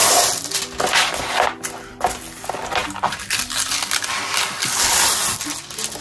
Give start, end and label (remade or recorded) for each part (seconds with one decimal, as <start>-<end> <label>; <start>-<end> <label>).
0.0-6.0 recorded